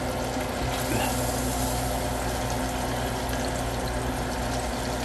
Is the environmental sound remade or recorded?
recorded